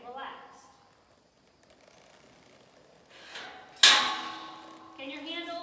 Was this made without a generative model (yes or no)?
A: yes